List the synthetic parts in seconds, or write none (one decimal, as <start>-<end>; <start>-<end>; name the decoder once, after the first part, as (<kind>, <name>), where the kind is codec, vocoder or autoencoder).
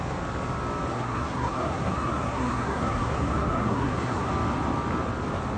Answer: 0.9-4.3 (codec, SNAC)